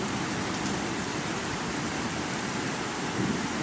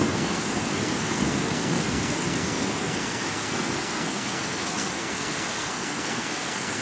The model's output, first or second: second